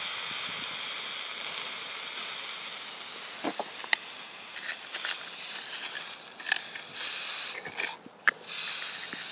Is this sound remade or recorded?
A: recorded